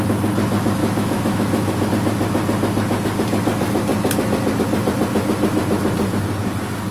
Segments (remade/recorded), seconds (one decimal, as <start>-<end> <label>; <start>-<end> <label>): 0.0-0.8 recorded; 0.8-1.9 remade; 1.9-6.9 recorded